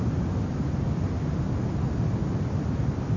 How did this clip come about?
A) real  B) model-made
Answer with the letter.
A